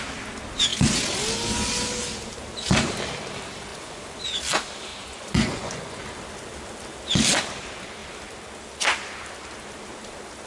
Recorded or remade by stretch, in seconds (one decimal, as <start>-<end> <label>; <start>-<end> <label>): 0.0-3.7 recorded; 3.7-4.2 remade; 4.2-4.9 recorded; 4.9-6.0 remade; 6.0-10.5 recorded